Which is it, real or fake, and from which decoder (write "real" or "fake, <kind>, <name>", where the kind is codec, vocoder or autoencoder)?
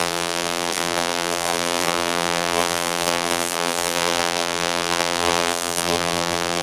fake, vocoder, BigVGAN v2